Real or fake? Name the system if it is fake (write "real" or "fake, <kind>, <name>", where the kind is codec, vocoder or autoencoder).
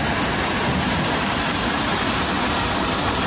real